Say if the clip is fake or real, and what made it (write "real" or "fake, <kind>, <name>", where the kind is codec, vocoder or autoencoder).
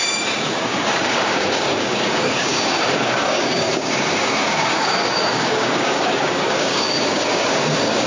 fake, codec, DAC